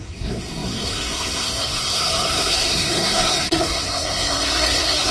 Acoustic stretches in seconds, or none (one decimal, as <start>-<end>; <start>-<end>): none